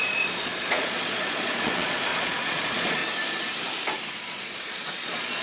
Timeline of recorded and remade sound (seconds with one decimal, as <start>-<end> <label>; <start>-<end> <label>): 0.0-3.0 remade; 3.0-4.1 recorded; 4.1-5.4 remade

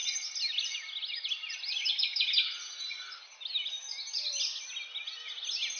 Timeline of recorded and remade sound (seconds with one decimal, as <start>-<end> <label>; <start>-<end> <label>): 0.0-5.8 recorded

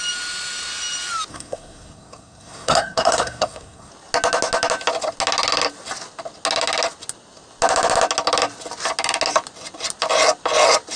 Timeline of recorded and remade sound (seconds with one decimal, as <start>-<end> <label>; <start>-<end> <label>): 0.0-1.3 recorded; 1.3-3.9 remade; 3.9-11.0 recorded

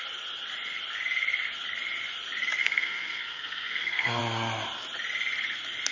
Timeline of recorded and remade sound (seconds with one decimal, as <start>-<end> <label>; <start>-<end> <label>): 0.0-2.6 recorded; 2.6-4.2 remade; 4.2-5.9 recorded

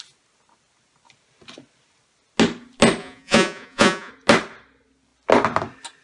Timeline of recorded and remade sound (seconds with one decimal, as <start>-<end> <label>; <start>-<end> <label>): 0.0-3.0 recorded; 3.0-4.1 remade; 4.1-6.0 recorded

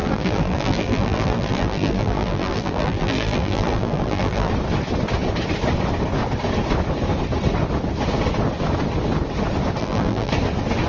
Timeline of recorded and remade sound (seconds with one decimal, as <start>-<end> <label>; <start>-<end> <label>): 0.0-4.5 remade; 4.5-9.8 recorded; 9.8-10.3 remade; 10.3-10.9 recorded